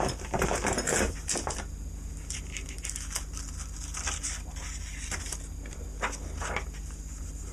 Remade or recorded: recorded